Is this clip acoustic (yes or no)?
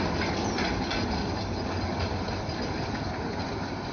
yes